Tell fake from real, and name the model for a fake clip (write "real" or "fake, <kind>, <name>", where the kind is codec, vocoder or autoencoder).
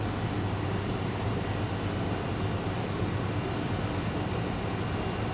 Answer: real